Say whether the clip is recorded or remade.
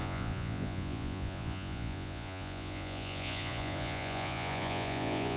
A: remade